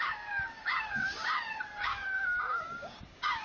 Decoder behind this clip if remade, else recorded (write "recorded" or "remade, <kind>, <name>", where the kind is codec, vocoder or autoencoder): remade, codec, DAC